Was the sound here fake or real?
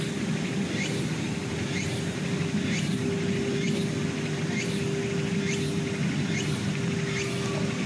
real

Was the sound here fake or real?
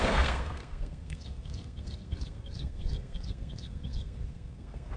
fake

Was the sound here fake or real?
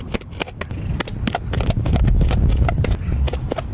real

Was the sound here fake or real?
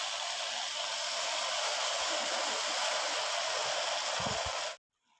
real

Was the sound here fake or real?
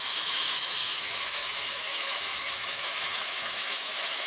fake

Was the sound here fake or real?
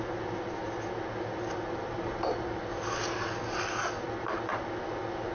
real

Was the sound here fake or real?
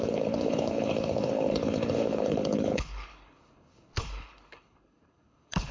fake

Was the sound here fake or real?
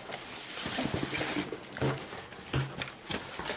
real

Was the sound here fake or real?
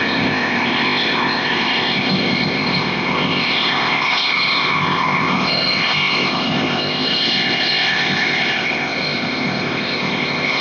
fake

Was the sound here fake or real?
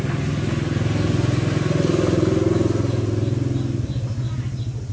real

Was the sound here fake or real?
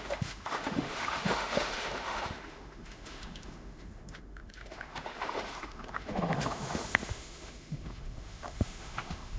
fake